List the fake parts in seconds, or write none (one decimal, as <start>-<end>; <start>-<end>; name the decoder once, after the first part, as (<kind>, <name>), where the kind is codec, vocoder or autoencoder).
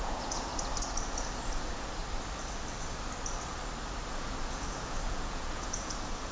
0.0-0.5 (vocoder, Vocos); 4.1-6.3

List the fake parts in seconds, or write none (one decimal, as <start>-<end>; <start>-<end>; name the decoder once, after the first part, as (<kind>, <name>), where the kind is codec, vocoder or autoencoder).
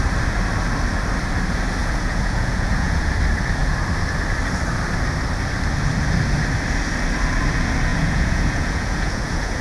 1.8-3.1 (vocoder, Vocos); 7.9-9.6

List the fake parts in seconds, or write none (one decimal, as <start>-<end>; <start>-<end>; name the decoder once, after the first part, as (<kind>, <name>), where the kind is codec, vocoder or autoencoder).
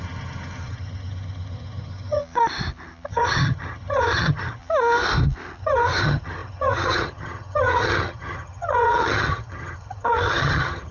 0.0-2.2 (vocoder, HiFi-GAN); 3.1-4.6; 5.6-10.9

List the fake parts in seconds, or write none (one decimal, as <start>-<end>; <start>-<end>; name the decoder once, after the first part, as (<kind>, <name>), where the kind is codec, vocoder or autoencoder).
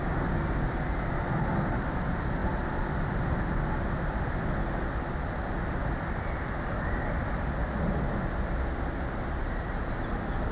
none